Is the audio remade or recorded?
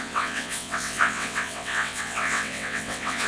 remade